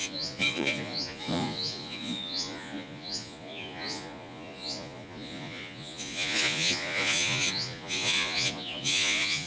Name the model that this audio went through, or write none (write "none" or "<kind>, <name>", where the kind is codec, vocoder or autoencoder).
vocoder, Vocos